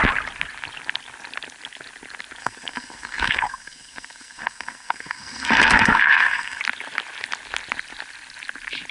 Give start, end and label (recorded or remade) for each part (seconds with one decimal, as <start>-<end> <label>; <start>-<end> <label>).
0.0-2.4 recorded; 2.4-6.6 remade; 6.6-8.9 recorded